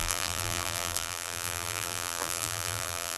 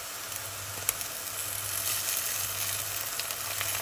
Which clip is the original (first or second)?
second